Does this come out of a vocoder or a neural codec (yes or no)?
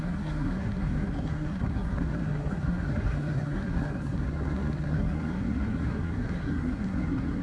yes